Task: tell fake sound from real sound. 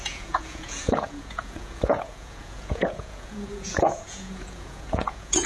fake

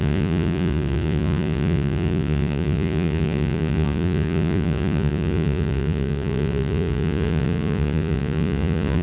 fake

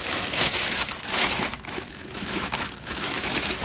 fake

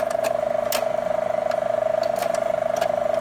real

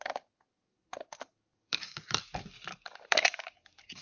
fake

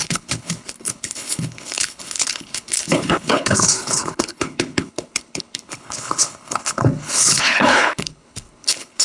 fake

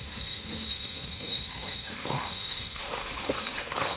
fake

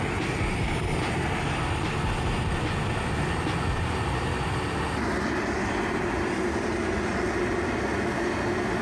real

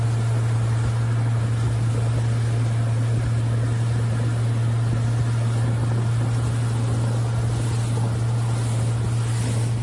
real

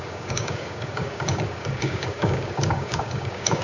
fake